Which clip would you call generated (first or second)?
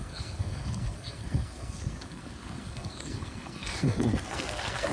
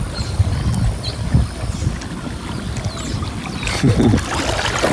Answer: first